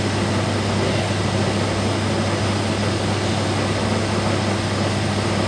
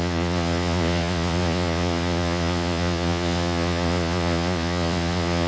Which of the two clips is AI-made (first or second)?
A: second